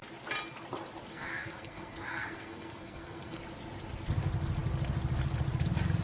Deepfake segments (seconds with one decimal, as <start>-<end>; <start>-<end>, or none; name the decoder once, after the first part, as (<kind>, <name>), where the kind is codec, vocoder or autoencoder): 1.1-3.4 (codec, SNAC)